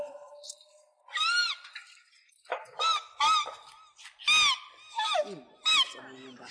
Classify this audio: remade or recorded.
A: recorded